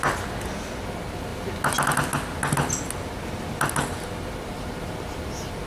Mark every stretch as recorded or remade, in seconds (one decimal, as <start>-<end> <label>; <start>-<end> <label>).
0.0-5.7 recorded